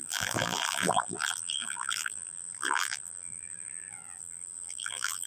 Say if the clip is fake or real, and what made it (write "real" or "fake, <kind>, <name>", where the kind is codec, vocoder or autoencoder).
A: fake, vocoder, BigVGAN v2